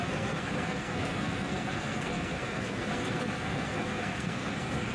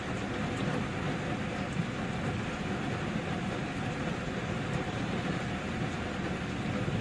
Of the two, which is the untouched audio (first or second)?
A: second